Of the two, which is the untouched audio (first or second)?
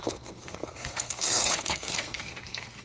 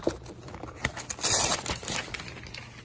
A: second